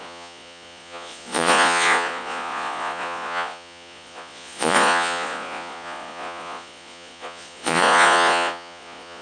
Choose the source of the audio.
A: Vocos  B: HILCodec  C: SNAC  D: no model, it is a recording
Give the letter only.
A